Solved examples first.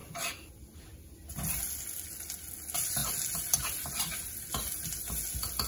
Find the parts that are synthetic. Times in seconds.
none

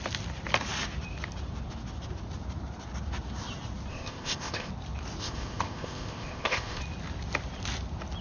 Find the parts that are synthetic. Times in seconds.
3.9-4.7 (codec, ZipCodec); 5.2-6.8